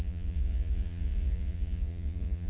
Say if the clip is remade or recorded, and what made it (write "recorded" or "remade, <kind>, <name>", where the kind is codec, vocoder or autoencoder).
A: remade, vocoder, Vocos